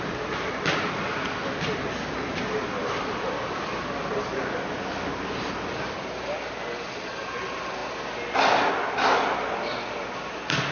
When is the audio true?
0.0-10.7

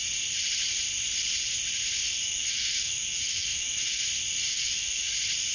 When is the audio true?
0.0-2.2; 4.0-4.5; 5.1-5.5

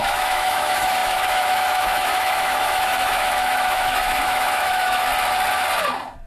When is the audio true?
5.1-6.3

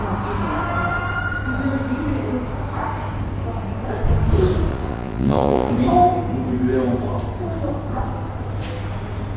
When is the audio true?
0.0-4.7; 5.7-9.4

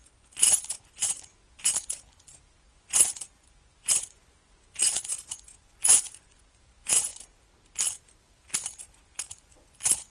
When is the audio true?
7.1-8.8

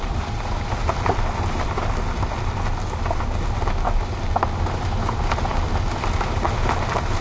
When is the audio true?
0.0-7.2

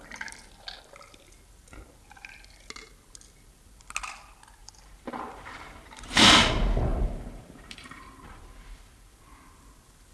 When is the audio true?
0.0-4.6; 5.6-6.9; 8.4-10.1